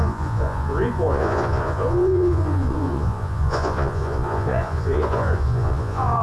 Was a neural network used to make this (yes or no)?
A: yes